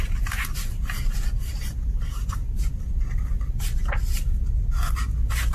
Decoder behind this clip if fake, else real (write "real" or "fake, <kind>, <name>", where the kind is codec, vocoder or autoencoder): real